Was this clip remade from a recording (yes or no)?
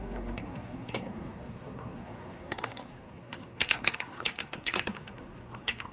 yes